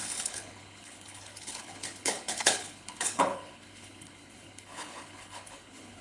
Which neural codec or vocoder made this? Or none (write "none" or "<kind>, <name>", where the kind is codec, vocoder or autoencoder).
codec, HILCodec